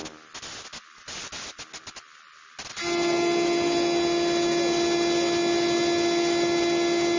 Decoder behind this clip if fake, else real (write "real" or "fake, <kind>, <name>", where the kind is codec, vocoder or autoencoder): real